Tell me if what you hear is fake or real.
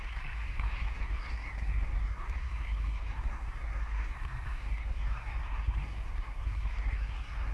fake